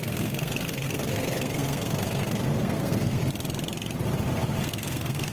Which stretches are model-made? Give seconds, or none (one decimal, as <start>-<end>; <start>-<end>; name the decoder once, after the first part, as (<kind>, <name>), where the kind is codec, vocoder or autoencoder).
0.0-3.2 (codec, SNAC); 4.6-5.3